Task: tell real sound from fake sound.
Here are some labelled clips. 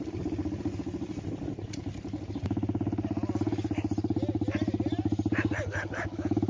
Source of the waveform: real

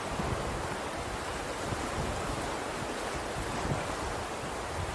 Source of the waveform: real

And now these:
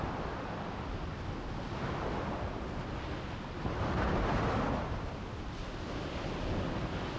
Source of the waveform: real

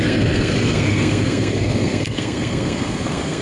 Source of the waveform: fake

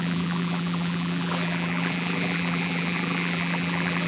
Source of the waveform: fake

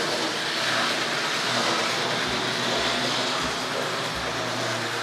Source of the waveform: real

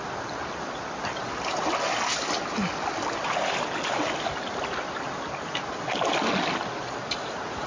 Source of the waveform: real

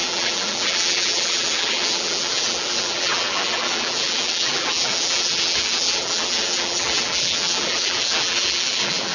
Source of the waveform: fake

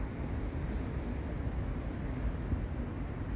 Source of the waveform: real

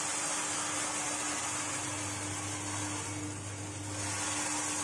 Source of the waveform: real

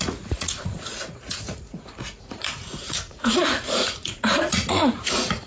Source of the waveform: fake